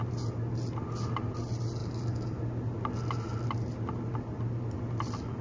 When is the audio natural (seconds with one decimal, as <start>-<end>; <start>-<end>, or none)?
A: 0.0-5.4